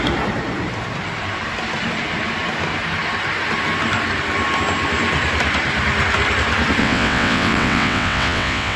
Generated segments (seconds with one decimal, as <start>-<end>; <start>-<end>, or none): 6.8-8.8